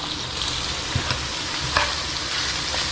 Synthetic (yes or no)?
no